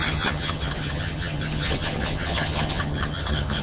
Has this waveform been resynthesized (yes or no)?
yes